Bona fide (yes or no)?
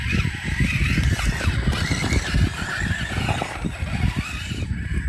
yes